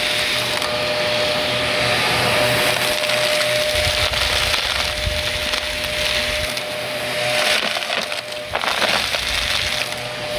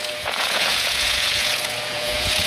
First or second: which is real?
first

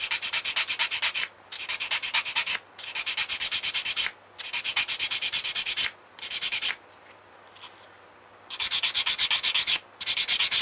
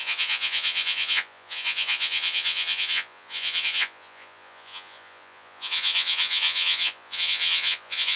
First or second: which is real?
first